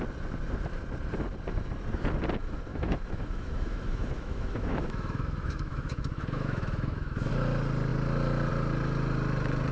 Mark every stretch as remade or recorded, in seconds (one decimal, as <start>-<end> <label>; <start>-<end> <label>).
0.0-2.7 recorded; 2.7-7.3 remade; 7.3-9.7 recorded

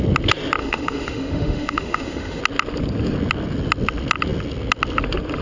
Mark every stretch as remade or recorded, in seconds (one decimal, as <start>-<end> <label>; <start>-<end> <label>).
0.0-0.6 recorded; 0.6-2.4 remade; 2.4-5.4 recorded

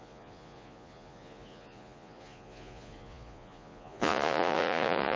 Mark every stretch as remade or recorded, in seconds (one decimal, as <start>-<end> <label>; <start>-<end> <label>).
0.0-5.2 remade

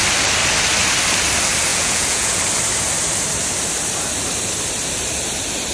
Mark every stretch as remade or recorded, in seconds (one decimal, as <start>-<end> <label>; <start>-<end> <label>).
0.0-1.7 recorded; 1.7-2.4 remade; 2.4-5.7 recorded

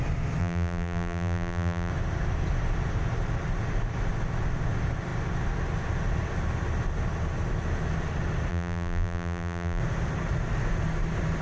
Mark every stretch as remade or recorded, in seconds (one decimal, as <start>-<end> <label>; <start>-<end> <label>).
0.0-0.4 recorded; 0.4-1.9 remade; 1.9-8.5 recorded; 8.5-9.8 remade; 9.8-11.4 recorded